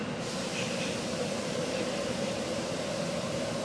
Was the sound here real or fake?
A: real